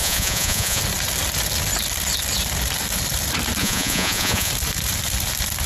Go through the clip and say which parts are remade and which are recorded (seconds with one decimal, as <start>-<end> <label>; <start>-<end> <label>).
0.0-0.8 remade; 0.8-3.6 recorded; 3.6-4.5 remade; 4.5-5.7 recorded